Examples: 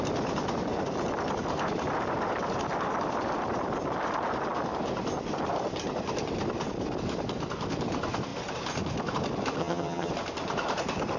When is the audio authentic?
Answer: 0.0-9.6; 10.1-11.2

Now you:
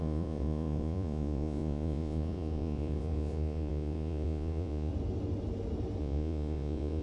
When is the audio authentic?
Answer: 4.9-6.0

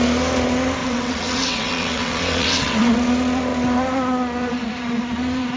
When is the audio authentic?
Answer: 0.0-0.8; 2.9-5.6

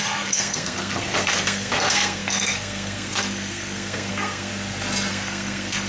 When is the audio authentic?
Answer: 4.5-5.1

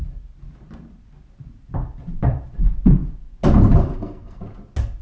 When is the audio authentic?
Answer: 0.0-3.8; 4.4-5.0

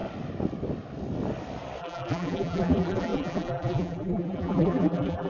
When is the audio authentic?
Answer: 0.0-1.8

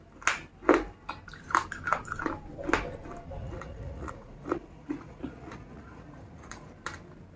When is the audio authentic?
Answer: 0.0-3.4; 6.7-7.4

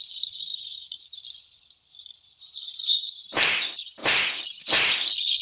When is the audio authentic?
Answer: 0.0-0.5; 1.2-2.7; 3.5-5.4